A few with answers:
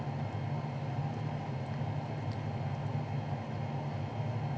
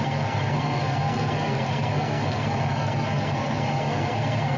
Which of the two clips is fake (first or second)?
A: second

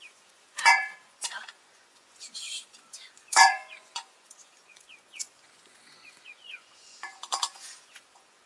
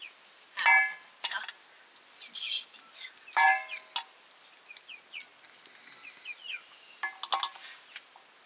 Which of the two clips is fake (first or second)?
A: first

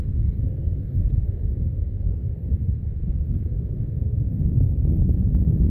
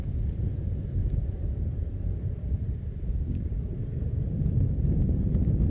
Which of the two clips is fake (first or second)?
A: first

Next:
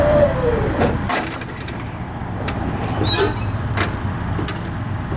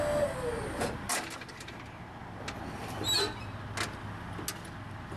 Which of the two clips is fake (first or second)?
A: first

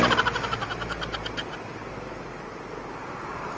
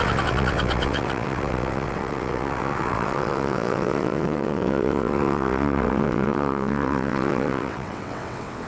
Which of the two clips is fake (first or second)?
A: second